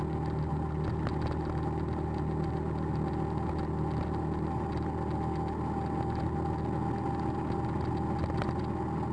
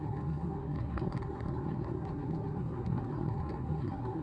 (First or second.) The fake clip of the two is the second